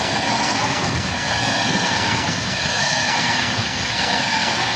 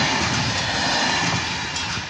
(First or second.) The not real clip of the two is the first